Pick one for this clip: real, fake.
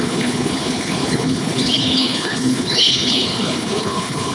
fake